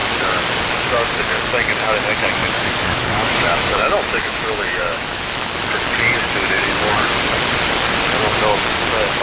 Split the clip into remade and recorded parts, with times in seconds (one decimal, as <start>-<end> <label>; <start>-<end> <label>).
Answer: 0.0-2.4 recorded; 2.4-5.6 remade; 5.6-9.2 recorded